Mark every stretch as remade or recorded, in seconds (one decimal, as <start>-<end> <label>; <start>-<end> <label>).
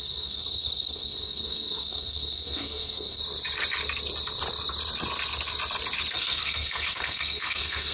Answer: 0.0-3.2 remade; 3.2-6.1 recorded; 6.1-7.9 remade